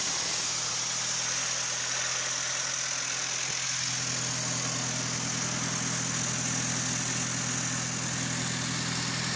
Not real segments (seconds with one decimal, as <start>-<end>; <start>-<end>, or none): none